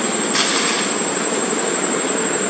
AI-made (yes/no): no